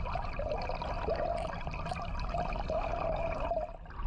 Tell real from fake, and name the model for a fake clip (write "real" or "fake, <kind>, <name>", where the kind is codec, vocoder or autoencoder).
real